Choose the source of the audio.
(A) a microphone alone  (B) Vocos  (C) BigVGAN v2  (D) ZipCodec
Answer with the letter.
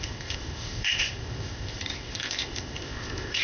D